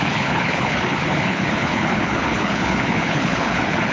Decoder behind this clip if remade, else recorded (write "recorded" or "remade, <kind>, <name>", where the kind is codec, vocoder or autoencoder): remade, codec, HILCodec